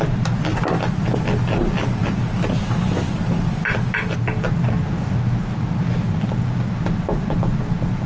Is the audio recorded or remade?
recorded